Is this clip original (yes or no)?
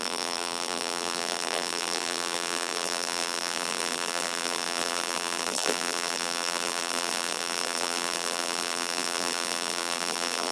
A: no